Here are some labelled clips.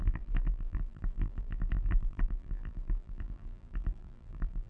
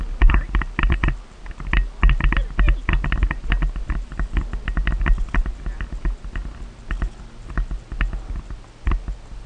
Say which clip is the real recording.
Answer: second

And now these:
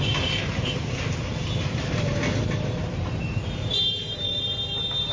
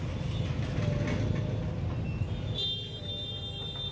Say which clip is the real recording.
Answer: second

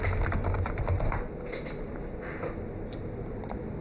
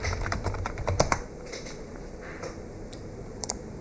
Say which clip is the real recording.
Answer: first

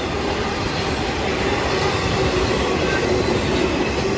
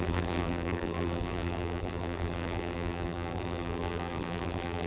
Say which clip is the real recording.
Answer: first